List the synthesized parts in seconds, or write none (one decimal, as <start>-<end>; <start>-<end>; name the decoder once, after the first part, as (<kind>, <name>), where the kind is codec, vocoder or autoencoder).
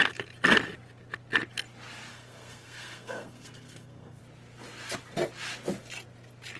2.1-4.2 (codec, SNAC)